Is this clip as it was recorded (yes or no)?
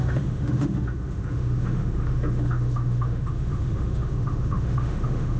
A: no